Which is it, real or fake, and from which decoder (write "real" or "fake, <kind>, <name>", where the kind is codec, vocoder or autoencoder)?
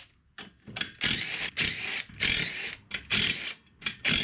real